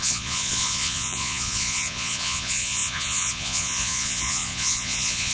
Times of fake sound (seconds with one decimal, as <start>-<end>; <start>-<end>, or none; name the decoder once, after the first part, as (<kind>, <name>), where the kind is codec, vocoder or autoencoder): 0.0-5.3 (vocoder, Vocos)